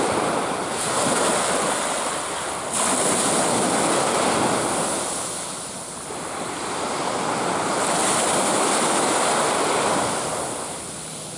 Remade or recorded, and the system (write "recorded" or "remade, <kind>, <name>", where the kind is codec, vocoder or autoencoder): recorded